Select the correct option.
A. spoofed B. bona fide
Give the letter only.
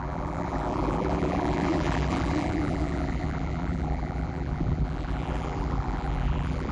A